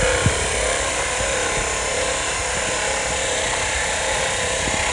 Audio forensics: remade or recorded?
remade